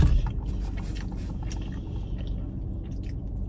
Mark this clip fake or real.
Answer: real